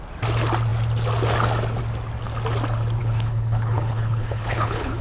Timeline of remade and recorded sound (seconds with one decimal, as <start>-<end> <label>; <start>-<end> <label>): 0.0-3.0 recorded; 3.0-5.0 remade